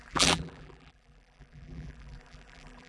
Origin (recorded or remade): remade